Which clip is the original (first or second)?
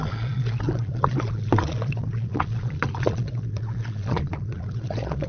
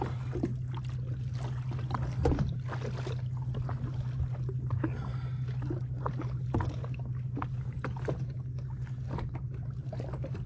second